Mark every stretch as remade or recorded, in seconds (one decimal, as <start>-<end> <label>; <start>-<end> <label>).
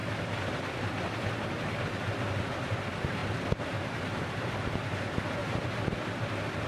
0.0-5.4 recorded; 5.4-5.9 remade; 5.9-6.7 recorded